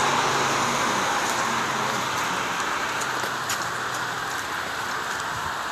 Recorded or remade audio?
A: recorded